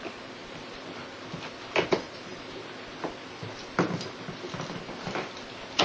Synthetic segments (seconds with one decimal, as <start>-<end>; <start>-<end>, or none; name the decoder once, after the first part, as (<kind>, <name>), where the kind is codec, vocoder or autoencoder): 0.4-1.0 (vocoder, BigVGAN v2); 2.3-5.8